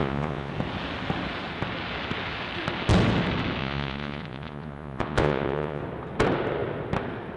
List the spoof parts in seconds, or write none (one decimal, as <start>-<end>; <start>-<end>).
0.0-0.5; 3.6-5.8